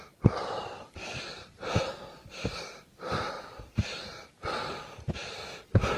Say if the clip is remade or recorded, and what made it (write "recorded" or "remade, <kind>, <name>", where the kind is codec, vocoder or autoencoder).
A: recorded